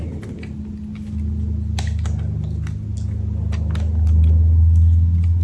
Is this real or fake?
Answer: real